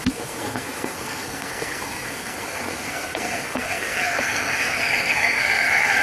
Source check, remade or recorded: remade